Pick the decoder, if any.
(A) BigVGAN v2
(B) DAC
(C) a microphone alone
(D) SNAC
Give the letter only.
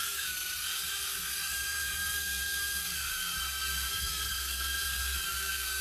D